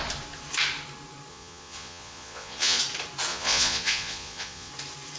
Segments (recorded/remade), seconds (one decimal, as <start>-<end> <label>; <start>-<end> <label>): 0.0-1.3 recorded; 1.3-2.8 remade; 2.8-3.3 recorded; 3.3-4.7 remade; 4.7-5.2 recorded